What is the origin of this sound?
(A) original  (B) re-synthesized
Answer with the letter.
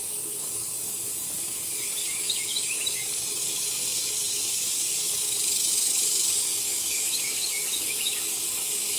B